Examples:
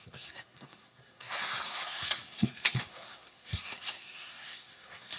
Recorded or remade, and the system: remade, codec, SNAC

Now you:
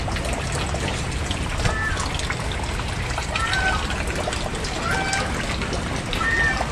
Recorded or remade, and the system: recorded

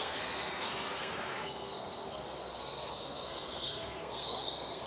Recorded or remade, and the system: remade, codec, SNAC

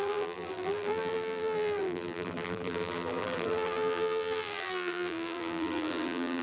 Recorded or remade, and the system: remade, vocoder, BigVGAN v2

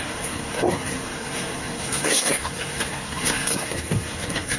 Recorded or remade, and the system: remade, codec, SNAC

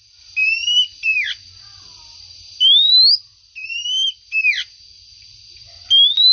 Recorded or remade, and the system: recorded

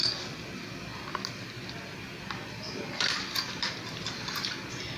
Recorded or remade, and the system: recorded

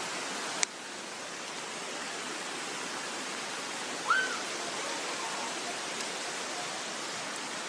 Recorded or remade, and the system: recorded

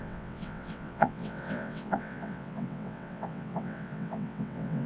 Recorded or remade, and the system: remade, vocoder, WaveNeXt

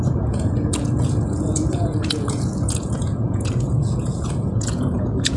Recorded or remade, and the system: remade, vocoder, Vocos